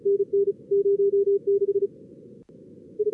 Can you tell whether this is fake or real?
real